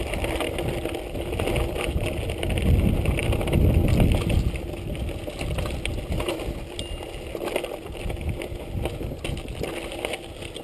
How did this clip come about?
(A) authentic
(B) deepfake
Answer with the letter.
A